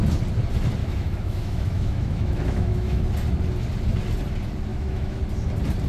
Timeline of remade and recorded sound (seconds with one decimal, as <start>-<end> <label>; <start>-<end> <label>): 0.0-0.8 recorded; 0.8-3.0 remade; 3.0-4.7 recorded; 4.7-5.2 remade; 5.2-5.9 recorded